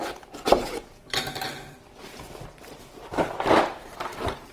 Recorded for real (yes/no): no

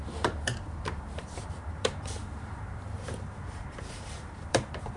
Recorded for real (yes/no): no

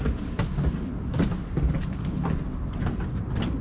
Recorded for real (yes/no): yes